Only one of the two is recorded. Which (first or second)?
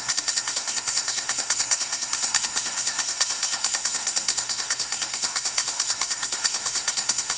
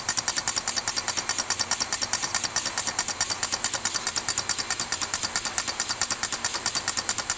second